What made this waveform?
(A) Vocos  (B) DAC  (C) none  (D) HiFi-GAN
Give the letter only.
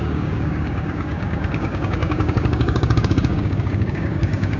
B